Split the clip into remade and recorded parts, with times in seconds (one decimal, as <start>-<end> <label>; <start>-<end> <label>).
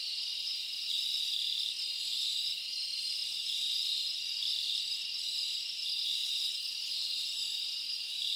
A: 0.0-8.4 recorded